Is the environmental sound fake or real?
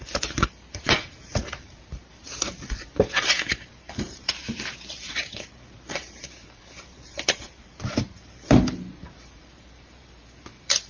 fake